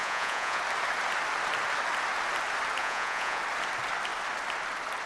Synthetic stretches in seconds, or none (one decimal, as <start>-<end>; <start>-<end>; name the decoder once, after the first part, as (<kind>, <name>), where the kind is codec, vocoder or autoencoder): 0.0-0.6 (vocoder, Vocos); 2.8-3.4